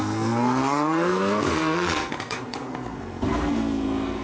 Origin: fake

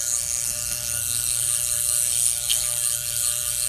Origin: fake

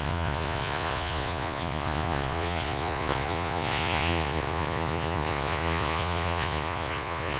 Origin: fake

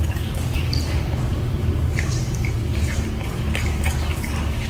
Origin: fake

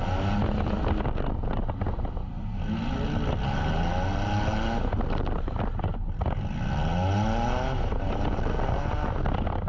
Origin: real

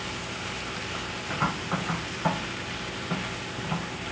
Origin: real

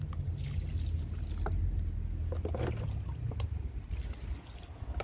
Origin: real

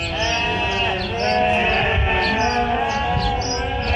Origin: real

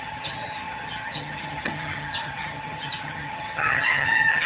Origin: fake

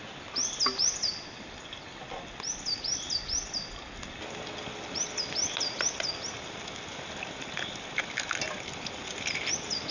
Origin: real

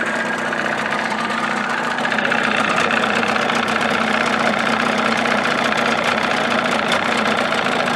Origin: fake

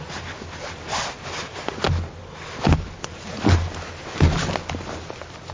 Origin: real